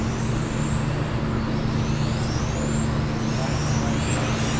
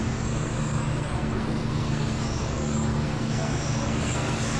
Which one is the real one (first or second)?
first